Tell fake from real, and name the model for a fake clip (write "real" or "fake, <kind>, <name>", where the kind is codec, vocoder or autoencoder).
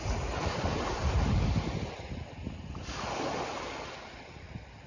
real